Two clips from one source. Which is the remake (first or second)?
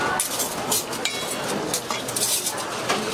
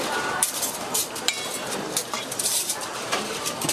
second